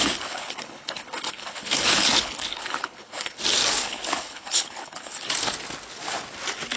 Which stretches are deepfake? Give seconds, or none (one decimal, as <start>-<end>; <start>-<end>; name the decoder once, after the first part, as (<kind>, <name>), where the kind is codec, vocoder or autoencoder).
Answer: 0.0-3.4 (codec, HILCodec); 3.8-5.3